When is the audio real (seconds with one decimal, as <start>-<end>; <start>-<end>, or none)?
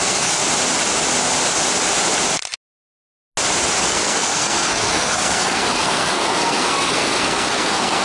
0.4-3.8